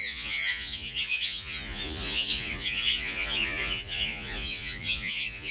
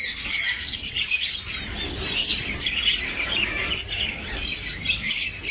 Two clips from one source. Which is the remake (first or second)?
first